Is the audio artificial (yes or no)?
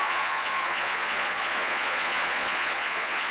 yes